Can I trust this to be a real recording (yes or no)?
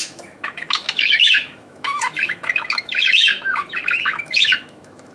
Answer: no